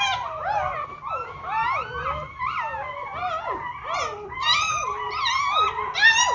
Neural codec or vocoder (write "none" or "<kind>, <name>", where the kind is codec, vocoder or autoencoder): none